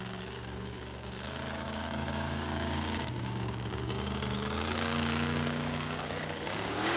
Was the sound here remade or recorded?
remade